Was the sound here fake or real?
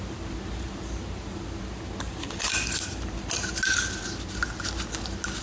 real